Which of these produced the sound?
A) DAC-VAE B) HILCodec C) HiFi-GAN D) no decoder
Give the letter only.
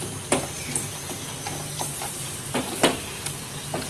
D